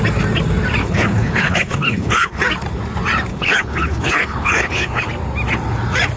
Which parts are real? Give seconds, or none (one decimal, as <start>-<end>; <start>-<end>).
0.0-0.8; 2.4-3.3; 5.1-6.2